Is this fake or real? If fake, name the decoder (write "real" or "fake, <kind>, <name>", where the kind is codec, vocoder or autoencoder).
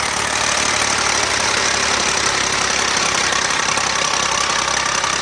real